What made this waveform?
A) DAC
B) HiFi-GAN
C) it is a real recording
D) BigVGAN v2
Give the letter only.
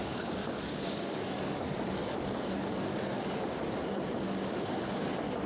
A